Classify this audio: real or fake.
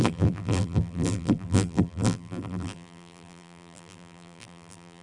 fake